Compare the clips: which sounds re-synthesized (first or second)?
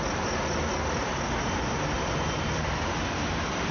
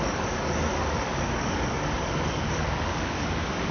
second